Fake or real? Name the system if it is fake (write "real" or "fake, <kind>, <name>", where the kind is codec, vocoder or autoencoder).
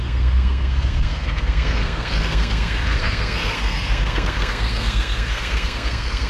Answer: fake, codec, SNAC